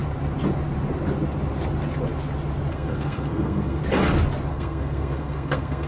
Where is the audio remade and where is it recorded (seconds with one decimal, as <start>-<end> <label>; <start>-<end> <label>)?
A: 0.0-2.7 recorded; 2.7-3.8 remade; 3.8-4.5 recorded; 4.5-5.9 remade